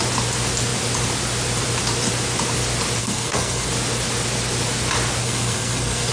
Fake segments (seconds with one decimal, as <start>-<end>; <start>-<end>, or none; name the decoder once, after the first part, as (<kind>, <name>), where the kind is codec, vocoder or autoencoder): 3.0-3.7 (codec, SNAC); 5.2-6.1